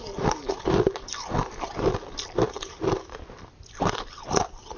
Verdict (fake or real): real